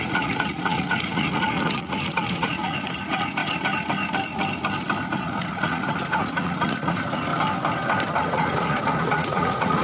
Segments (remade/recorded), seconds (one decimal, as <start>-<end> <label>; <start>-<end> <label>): 0.0-3.4 remade; 3.4-5.1 recorded; 5.1-7.3 remade; 7.3-8.2 recorded; 8.2-9.8 remade